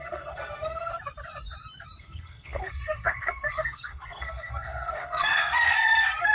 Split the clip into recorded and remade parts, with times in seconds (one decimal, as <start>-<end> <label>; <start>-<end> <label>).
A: 0.0-0.9 remade; 0.9-2.0 recorded; 2.0-6.3 remade